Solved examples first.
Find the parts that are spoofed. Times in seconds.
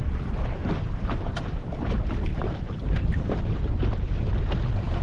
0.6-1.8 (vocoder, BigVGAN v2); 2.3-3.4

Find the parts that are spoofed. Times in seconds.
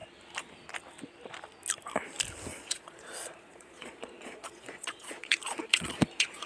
2.5-6.5 (vocoder, Vocos)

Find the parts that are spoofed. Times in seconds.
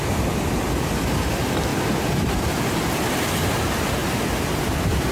none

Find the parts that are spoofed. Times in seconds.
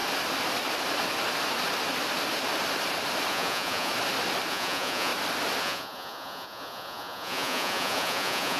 3.3-3.9 (vocoder, Vocos); 4.5-5.1; 5.6-8.6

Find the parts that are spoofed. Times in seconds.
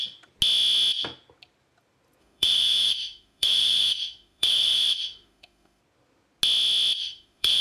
2.2-5.8 (autoencoder, DAC-VAE); 7.0-7.6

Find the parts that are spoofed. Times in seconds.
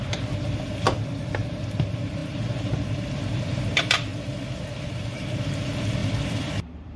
0.0-4.1 (vocoder, BigVGAN v2); 4.8-7.0